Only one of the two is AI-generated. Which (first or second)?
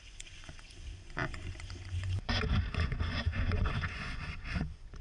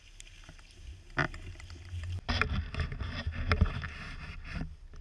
first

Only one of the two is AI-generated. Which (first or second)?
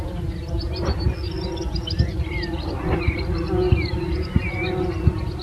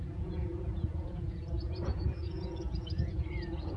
second